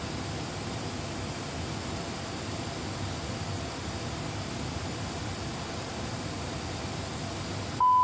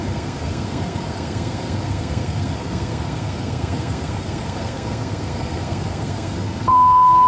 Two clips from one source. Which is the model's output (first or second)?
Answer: second